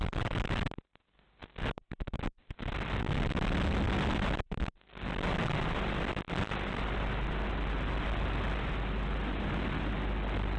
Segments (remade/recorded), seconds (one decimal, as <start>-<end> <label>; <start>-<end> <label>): 0.0-10.6 recorded